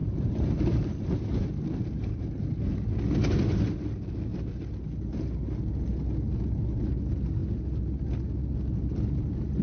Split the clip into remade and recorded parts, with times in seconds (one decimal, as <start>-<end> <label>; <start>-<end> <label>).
0.0-2.7 remade; 2.7-9.6 recorded